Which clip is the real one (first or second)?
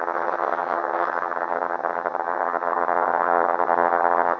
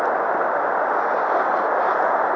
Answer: second